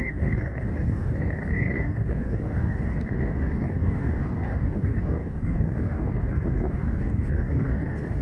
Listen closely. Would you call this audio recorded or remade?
remade